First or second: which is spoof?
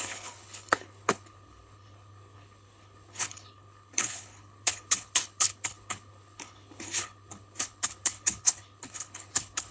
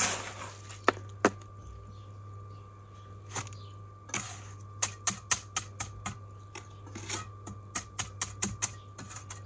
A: first